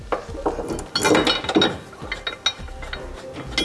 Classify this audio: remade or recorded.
recorded